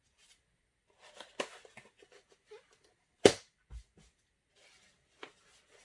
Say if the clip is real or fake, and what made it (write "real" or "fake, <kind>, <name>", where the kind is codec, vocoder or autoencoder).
real